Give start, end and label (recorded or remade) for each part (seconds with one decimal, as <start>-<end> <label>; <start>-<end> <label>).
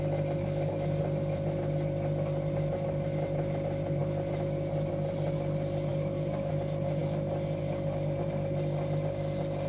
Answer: 0.0-0.4 recorded; 0.4-1.0 remade; 1.0-5.9 recorded; 5.9-6.5 remade; 6.5-9.7 recorded